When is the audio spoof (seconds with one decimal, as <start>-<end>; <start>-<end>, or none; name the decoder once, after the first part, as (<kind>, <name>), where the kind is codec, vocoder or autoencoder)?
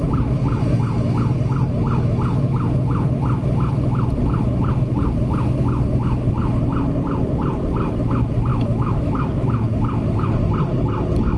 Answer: 8.5-9.1 (autoencoder, DAC-VAE)